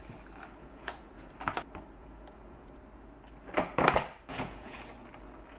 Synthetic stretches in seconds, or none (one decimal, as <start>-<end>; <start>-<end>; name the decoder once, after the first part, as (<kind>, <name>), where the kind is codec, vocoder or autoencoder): 0.6-1.3 (vocoder, Vocos); 2.0-2.8; 4.3-4.8